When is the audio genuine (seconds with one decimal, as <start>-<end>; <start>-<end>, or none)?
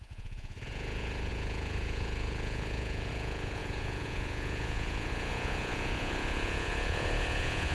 none